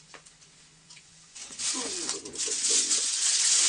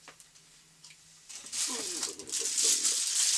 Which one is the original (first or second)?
second